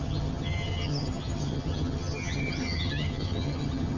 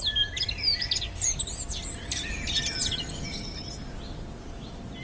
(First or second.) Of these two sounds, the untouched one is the second